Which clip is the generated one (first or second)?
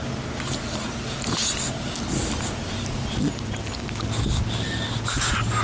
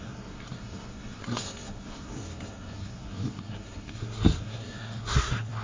second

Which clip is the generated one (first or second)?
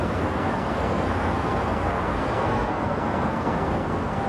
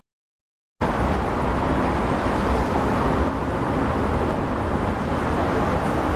first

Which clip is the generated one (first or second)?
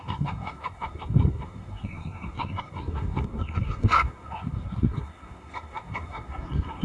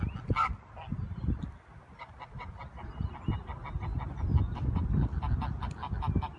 first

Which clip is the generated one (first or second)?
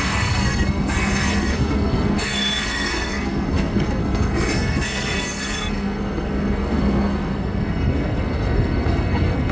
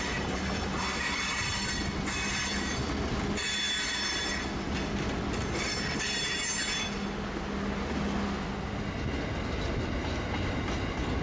first